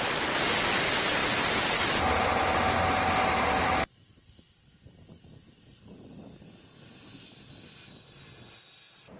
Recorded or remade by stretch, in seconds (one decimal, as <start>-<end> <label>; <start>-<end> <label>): 0.0-9.2 recorded